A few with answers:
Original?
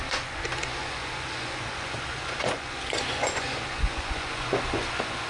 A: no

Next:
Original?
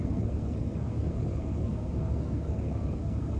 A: no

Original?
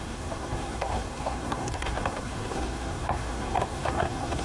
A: no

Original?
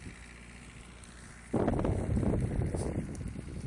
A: yes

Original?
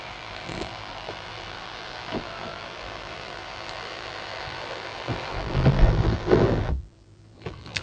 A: no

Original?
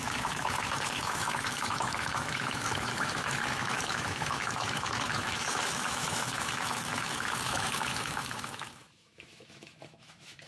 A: no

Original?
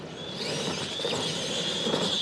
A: yes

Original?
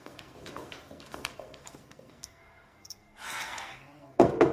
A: no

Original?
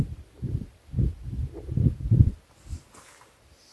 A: yes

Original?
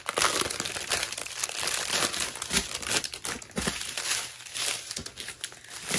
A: yes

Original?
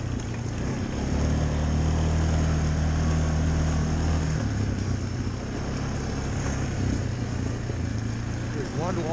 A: yes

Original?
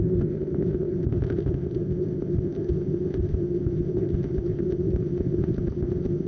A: no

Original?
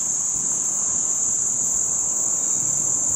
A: yes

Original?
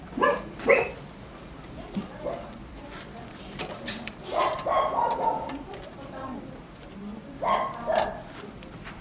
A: no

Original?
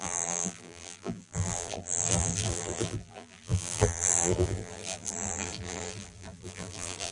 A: no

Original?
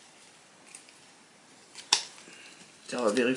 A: yes